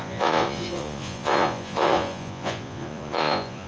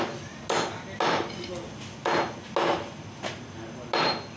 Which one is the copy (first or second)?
first